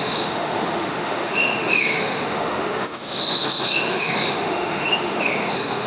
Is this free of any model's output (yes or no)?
no